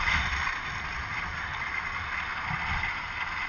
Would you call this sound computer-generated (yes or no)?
no